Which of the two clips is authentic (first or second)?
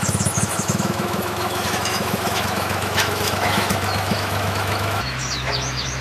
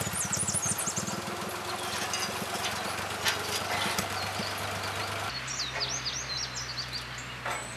second